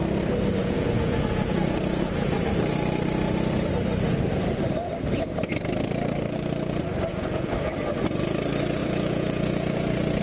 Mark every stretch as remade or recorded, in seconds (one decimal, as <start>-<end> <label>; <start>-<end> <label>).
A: 0.0-0.6 recorded; 0.6-2.1 remade; 2.1-7.1 recorded; 7.1-7.7 remade; 7.7-8.8 recorded; 8.8-10.2 remade